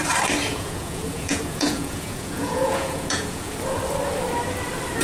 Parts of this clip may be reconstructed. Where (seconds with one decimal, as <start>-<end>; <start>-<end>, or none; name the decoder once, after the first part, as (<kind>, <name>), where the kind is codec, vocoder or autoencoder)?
0.5-3.5 (vocoder, Vocos)